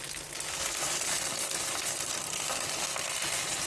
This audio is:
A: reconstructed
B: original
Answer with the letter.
B